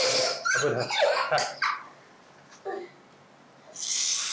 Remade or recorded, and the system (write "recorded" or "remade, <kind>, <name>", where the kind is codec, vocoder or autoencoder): recorded